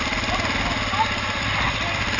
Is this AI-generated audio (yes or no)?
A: no